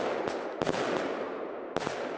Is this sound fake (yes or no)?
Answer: no